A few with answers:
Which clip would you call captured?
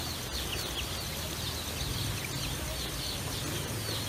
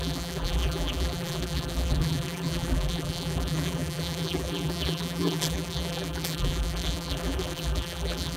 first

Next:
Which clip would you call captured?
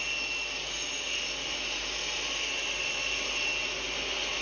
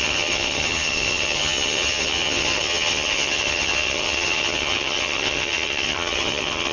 first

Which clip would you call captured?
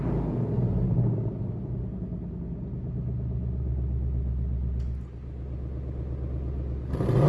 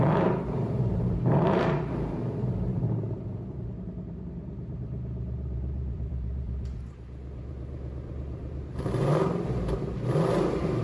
first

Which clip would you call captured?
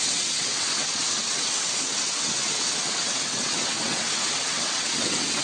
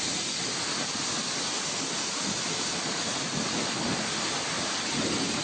second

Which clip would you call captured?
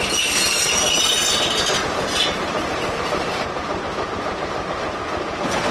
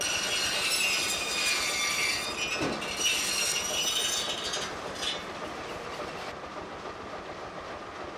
second